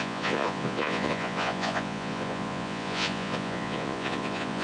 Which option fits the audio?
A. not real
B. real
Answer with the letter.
A